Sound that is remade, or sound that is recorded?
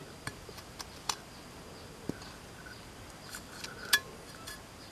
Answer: recorded